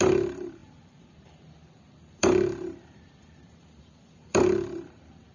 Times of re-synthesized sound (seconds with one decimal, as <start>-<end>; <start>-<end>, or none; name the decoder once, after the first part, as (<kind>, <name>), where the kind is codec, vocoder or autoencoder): 0.0-5.3 (vocoder, BigVGAN v2)